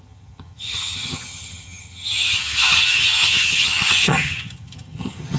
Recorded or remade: remade